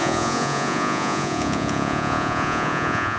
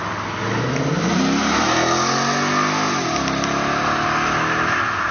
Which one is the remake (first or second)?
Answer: first